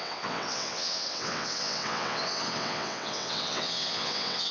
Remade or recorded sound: remade